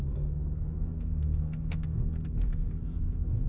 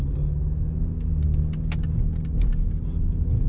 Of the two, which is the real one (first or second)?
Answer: second